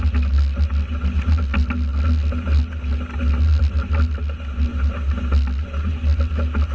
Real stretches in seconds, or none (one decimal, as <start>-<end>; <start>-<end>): 0.0-6.7